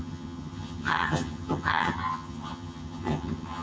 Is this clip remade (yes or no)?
yes